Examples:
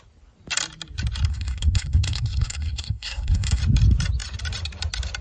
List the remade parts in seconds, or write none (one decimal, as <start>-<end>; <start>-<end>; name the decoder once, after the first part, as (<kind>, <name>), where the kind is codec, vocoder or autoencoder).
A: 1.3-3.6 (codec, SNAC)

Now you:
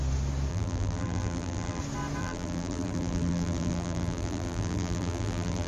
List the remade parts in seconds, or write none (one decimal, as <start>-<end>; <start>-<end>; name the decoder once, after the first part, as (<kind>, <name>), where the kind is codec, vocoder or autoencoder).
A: 0.5-1.8 (vocoder, BigVGAN v2); 2.2-5.7

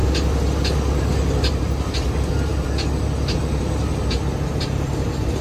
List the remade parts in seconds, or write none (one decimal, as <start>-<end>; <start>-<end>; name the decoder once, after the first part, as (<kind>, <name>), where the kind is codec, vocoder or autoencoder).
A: none

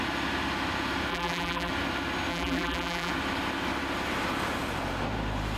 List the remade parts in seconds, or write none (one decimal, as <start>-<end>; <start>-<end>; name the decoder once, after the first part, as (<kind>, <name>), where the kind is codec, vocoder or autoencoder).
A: 1.1-1.7 (vocoder, BigVGAN v2); 2.3-3.1

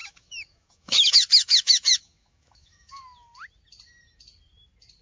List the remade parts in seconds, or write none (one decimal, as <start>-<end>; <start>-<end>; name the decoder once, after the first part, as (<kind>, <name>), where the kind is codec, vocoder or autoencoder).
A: 0.0-3.0 (autoencoder, DAC-VAE)